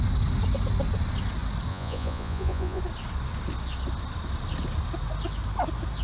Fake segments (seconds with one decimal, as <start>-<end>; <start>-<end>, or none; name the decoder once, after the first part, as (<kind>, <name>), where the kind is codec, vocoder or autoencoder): 1.7-2.8 (vocoder, Vocos)